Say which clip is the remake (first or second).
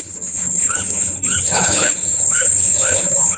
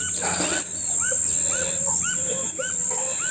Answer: first